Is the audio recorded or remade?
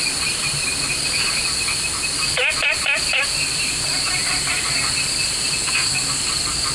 recorded